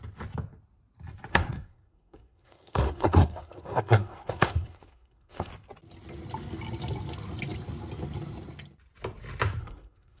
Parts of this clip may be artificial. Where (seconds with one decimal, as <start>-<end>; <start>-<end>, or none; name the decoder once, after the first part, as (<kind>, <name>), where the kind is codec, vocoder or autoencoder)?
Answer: 1.3-5.5 (codec, SNAC); 9.6-10.2